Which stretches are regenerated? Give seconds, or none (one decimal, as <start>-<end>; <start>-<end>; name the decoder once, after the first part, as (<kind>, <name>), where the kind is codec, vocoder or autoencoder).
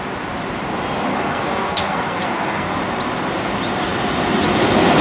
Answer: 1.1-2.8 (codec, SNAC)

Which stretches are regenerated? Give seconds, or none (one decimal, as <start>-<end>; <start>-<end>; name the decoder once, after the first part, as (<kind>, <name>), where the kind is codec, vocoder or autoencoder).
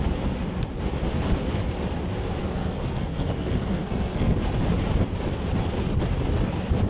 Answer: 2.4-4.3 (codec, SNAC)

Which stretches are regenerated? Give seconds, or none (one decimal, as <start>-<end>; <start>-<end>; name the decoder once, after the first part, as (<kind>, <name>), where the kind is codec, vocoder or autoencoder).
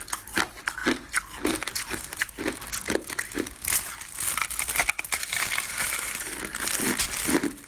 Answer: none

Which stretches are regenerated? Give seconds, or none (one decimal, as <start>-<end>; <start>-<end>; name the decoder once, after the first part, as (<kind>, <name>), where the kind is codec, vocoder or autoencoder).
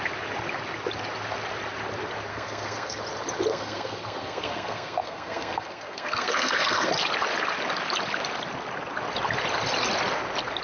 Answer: 2.3-3.0 (codec, SNAC); 3.5-6.9